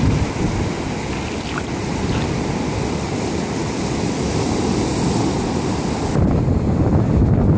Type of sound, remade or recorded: recorded